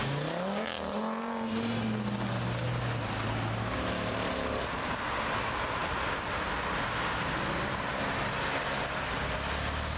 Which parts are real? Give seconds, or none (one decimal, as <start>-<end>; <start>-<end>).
0.0-10.0